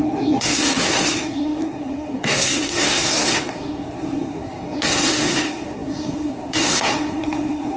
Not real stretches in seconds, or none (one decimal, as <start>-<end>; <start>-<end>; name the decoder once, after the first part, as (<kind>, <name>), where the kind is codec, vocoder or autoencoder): 0.0-7.8 (codec, SNAC)